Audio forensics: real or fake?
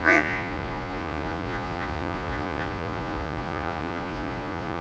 fake